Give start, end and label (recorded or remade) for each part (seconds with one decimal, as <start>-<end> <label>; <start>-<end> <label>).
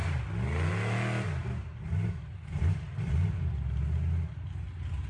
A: 0.0-1.4 recorded; 1.4-3.1 remade; 3.1-5.1 recorded